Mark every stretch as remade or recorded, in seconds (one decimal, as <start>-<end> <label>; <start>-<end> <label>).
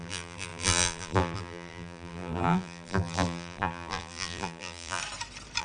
0.0-5.0 remade; 5.0-5.6 recorded